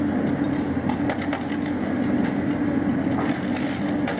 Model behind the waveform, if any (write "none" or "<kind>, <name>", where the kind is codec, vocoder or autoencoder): none